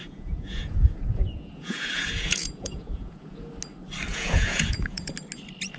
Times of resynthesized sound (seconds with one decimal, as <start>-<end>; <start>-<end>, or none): 0.0-3.5; 4.1-5.1